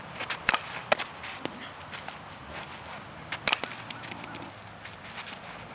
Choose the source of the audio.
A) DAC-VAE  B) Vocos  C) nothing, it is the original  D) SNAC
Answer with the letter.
C